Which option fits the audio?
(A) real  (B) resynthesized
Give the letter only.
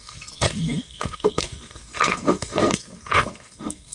B